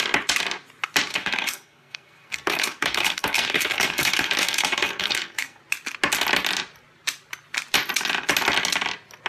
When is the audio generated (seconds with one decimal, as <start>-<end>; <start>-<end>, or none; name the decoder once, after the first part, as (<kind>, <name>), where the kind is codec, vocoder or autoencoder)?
1.1-5.6 (codec, SNAC)